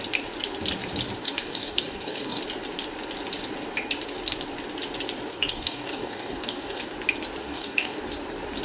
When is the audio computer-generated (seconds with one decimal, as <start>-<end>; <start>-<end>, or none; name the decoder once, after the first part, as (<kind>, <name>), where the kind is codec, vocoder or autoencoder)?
1.2-2.4 (codec, DAC); 5.3-6.8; 7.4-8.0